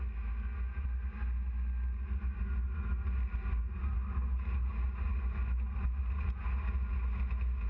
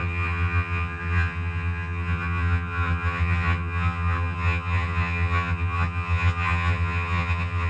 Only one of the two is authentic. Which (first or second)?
first